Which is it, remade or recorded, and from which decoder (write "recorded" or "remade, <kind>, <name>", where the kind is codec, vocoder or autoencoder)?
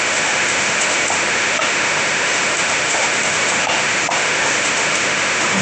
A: remade, autoencoder, DAC-VAE